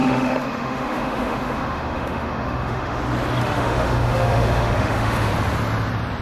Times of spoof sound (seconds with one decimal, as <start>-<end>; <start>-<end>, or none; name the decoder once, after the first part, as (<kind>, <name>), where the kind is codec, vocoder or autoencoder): 0.0-3.0 (autoencoder, DAC-VAE); 3.4-5.3